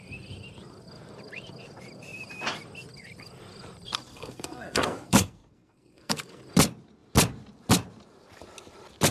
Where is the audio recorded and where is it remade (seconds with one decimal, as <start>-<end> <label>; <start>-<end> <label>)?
0.0-4.1 recorded; 4.1-6.4 remade; 6.4-9.1 recorded